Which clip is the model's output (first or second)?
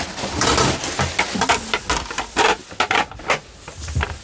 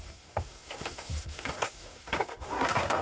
second